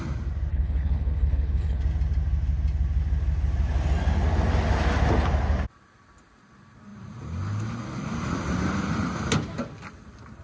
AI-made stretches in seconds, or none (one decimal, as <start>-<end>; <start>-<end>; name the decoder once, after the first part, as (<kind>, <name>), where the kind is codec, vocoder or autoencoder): 0.5-1.8 (codec, HILCodec)